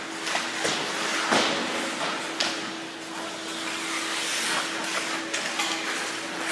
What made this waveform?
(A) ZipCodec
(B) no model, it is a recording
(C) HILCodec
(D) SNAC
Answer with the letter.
B